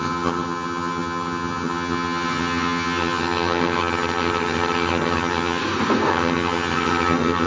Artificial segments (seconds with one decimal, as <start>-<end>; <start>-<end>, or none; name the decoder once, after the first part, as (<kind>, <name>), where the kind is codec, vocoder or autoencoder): 0.0-5.6 (vocoder, HiFi-GAN); 6.1-7.5